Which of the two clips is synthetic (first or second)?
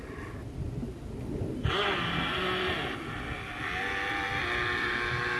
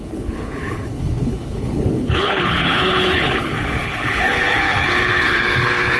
second